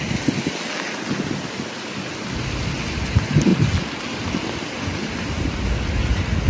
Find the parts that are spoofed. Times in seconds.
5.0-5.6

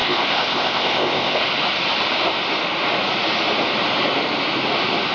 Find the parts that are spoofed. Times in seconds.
0.0-1.4

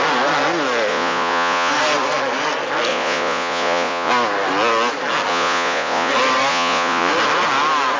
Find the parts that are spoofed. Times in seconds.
0.9-1.7; 2.9-4.1; 5.3-6.1; 6.5-7.1